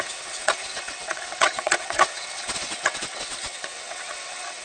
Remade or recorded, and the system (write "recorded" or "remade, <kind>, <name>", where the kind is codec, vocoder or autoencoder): remade, vocoder, WaveNeXt